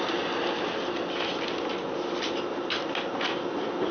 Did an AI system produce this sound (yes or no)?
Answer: no